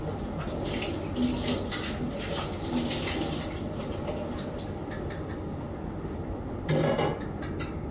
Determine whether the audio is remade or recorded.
recorded